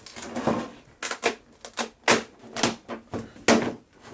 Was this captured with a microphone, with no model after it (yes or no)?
yes